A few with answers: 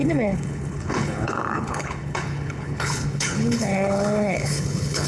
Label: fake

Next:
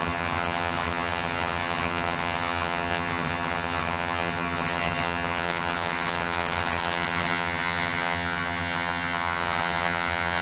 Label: fake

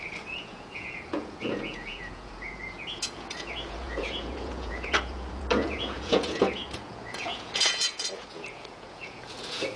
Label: fake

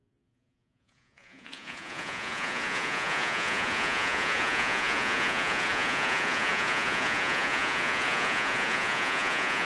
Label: fake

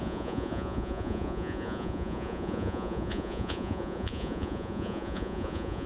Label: fake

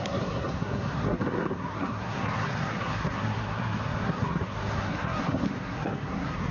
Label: fake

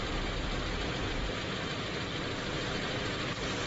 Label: real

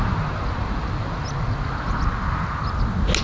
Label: real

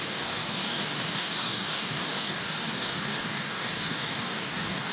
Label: fake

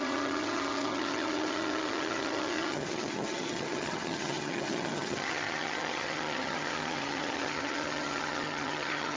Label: fake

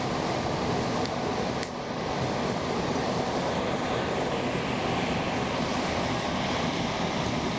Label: real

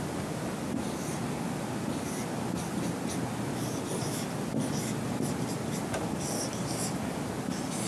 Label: real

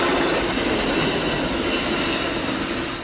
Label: real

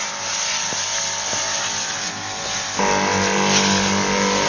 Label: real